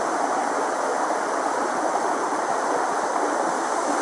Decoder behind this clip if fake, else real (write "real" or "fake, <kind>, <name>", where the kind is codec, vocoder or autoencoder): real